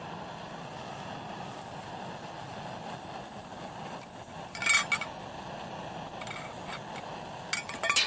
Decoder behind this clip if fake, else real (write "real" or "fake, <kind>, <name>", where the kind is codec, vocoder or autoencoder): real